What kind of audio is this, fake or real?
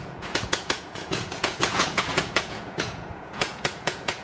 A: fake